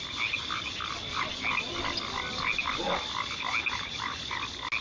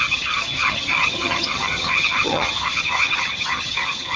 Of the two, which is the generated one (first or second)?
second